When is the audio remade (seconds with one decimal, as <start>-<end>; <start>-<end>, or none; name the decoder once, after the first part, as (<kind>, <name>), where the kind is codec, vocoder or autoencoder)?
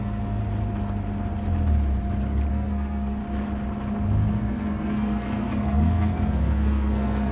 0.0-0.4 (codec, SNAC); 2.5-3.2; 4.3-7.3